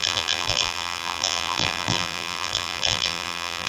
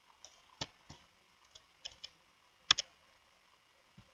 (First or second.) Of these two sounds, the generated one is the first